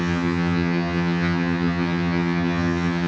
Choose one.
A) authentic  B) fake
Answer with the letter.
B